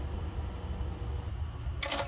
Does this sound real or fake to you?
real